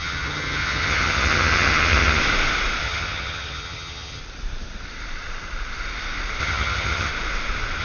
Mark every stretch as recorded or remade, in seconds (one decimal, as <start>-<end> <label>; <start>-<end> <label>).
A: 0.0-2.2 remade; 2.2-2.8 recorded; 2.8-4.2 remade; 4.2-6.4 recorded; 6.4-7.1 remade; 7.1-7.8 recorded